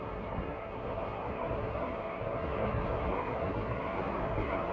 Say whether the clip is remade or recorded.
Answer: remade